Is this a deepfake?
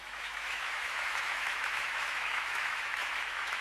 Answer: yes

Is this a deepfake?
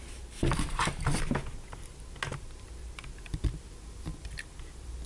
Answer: no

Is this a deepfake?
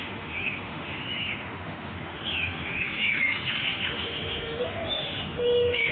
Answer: yes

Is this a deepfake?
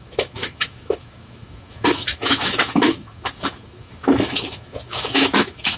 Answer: yes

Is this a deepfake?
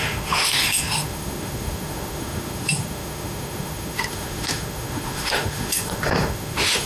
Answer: yes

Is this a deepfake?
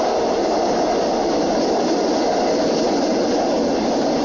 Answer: no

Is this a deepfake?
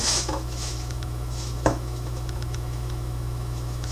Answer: yes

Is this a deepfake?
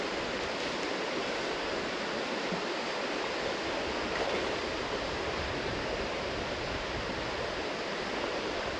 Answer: no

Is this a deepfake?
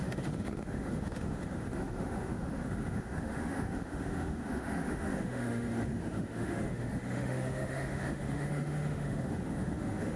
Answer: yes